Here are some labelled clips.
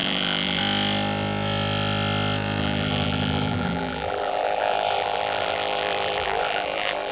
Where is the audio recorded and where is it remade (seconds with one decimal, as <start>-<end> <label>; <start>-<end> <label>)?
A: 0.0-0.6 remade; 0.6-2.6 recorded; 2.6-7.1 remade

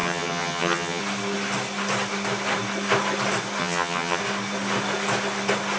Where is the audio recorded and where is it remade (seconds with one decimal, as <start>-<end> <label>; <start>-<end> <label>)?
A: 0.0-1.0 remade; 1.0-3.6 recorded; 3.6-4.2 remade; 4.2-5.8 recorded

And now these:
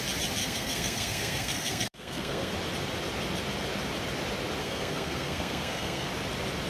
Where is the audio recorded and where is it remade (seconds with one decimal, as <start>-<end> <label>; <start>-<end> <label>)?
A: 0.0-0.4 recorded; 0.4-2.5 remade; 2.5-4.6 recorded; 4.6-6.1 remade; 6.1-6.7 recorded

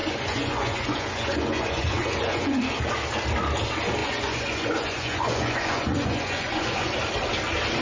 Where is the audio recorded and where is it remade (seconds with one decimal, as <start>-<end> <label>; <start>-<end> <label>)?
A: 0.0-2.6 remade; 2.6-4.0 recorded; 4.0-6.9 remade; 6.9-7.8 recorded

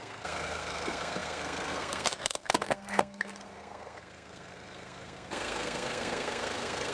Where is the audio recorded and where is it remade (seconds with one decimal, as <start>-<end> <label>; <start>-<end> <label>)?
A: 0.0-6.9 remade